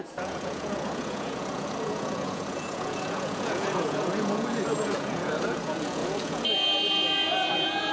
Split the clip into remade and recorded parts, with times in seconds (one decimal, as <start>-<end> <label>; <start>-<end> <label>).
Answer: 0.0-7.9 remade